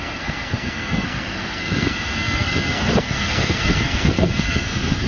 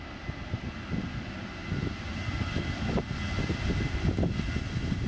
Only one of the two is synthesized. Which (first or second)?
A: first